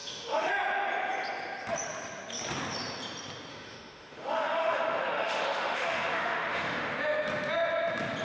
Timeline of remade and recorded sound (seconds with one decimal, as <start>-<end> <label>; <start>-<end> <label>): 0.0-0.5 remade; 0.5-3.5 recorded; 3.5-6.9 remade; 6.9-8.2 recorded